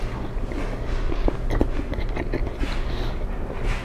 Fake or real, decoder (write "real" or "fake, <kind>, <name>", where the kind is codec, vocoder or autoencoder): real